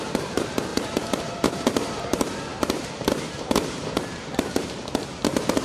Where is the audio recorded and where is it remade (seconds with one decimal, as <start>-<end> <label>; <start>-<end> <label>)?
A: 0.0-5.6 remade